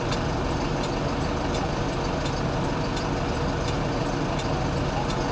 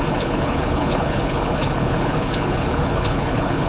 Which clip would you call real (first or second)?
first